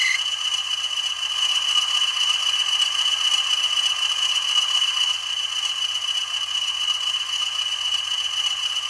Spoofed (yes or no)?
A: no